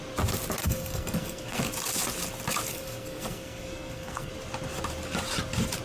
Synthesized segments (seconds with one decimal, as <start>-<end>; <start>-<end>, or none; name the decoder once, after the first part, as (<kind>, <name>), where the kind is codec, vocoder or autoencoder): 0.6-1.6 (codec, SNAC); 2.7-4.3